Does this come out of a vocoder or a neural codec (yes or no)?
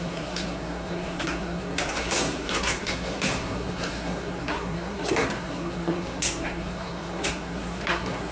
yes